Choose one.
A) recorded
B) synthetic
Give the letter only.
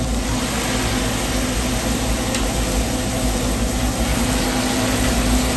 A